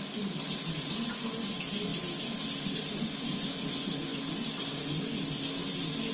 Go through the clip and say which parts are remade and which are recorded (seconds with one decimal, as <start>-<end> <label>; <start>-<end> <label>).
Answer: 0.0-6.1 recorded